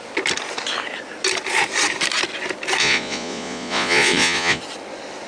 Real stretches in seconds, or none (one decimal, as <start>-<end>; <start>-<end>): 0.0-2.8; 4.6-5.3